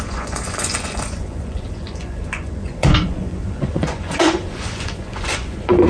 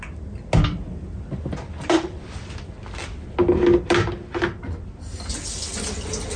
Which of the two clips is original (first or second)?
second